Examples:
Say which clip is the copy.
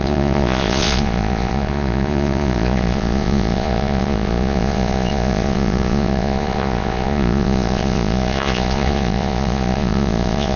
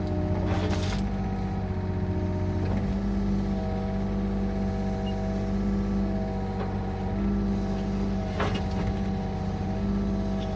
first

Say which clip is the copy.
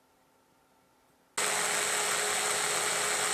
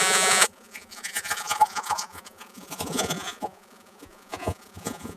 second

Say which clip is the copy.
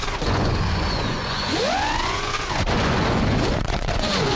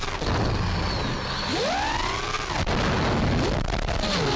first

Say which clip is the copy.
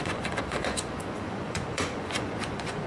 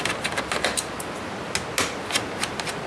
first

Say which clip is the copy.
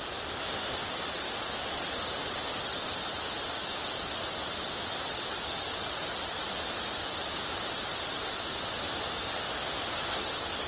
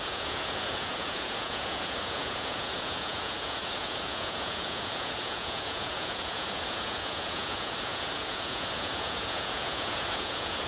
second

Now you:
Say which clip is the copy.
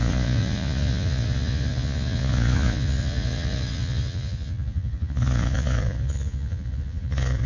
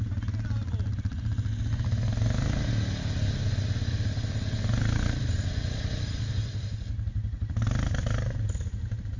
first